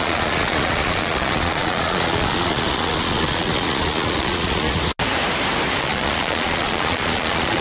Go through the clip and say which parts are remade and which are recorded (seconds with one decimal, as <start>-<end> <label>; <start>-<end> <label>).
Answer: 0.0-4.8 remade; 4.8-5.8 recorded; 5.8-7.6 remade